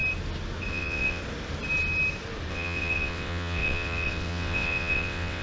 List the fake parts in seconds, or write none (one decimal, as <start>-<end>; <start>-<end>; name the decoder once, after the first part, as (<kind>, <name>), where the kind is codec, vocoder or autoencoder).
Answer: 0.7-1.2 (vocoder, WaveNeXt); 2.5-5.4